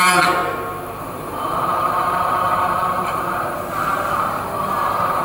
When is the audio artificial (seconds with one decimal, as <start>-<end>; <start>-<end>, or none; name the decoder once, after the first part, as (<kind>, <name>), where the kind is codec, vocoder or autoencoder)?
0.0-0.4 (vocoder, BigVGAN v2); 1.0-5.2